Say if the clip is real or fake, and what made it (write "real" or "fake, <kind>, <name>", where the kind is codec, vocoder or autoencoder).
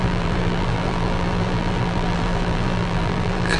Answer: fake, vocoder, BigVGAN v2